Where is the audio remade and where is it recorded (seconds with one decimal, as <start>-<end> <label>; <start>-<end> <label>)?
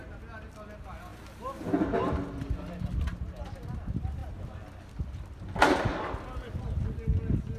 0.0-7.6 recorded